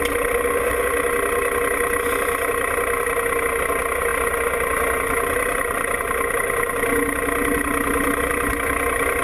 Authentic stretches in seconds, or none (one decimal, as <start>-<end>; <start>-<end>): 0.0-9.2